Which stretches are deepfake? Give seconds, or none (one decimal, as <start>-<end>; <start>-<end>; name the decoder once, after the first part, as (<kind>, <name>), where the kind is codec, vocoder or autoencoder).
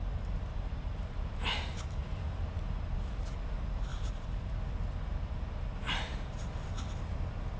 0.5-1.4 (vocoder, BigVGAN v2); 2.0-3.2; 3.9-4.5